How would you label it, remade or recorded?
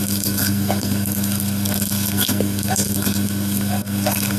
remade